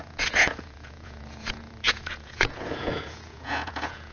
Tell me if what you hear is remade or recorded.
remade